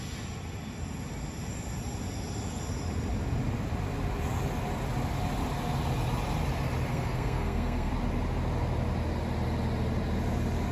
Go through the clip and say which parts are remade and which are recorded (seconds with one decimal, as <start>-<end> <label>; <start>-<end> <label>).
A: 0.0-6.9 recorded; 6.9-7.9 remade; 7.9-10.7 recorded